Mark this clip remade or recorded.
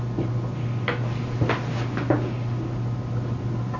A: recorded